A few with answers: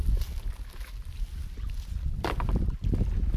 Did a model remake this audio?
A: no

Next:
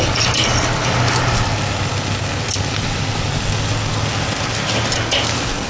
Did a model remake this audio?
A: no